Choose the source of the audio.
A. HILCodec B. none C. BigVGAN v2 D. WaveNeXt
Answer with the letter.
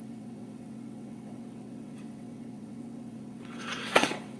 D